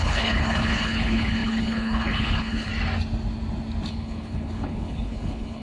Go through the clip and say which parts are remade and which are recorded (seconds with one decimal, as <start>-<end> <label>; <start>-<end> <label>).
0.0-2.7 remade; 2.7-3.9 recorded; 3.9-5.6 remade